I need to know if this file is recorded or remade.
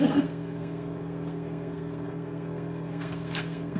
remade